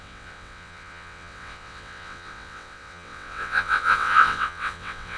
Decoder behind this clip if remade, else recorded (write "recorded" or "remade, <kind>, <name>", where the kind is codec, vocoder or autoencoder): remade, vocoder, WaveNeXt